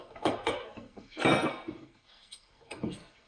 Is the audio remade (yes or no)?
yes